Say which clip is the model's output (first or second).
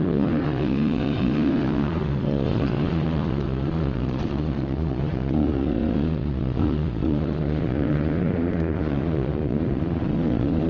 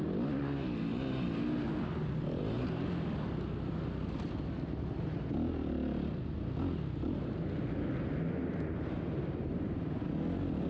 first